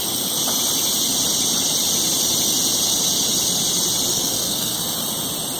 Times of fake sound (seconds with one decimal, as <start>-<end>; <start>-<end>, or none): 4.1-4.8